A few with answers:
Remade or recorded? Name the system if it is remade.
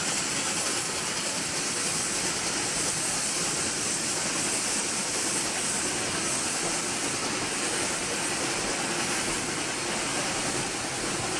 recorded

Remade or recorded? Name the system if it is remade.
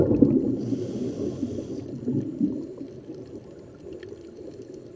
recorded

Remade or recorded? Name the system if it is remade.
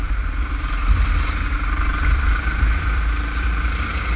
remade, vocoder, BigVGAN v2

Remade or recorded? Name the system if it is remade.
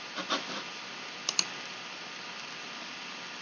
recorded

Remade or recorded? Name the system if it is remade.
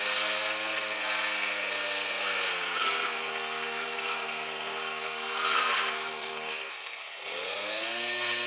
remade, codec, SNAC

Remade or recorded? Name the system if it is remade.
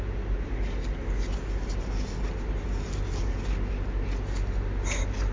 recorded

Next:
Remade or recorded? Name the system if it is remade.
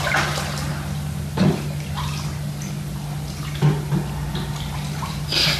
recorded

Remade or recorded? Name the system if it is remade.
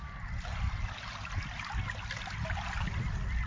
recorded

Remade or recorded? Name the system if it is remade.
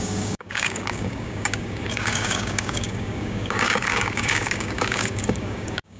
remade, codec, DAC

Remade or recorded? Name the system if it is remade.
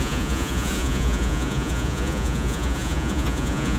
remade, vocoder, Vocos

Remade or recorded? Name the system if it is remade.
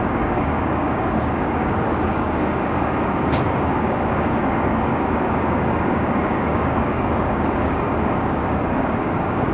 remade, codec, DAC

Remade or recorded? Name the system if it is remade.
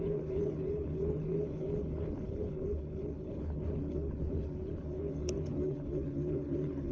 remade, codec, HILCodec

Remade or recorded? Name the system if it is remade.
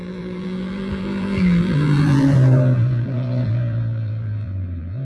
remade, vocoder, BigVGAN v2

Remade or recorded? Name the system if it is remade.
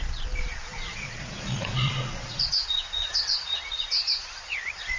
remade, vocoder, Vocos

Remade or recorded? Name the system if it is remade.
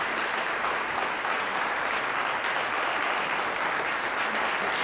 recorded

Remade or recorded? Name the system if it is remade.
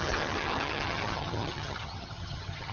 remade, vocoder, HiFi-GAN